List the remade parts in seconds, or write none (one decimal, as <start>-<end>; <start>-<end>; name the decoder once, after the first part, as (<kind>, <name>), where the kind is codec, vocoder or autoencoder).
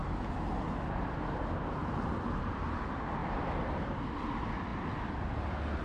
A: none